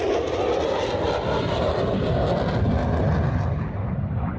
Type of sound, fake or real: real